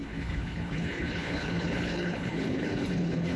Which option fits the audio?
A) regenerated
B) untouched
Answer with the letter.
A